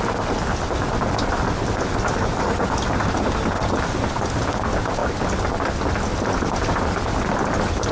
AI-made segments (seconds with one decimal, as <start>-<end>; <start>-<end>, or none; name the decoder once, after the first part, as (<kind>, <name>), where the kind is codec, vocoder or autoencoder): none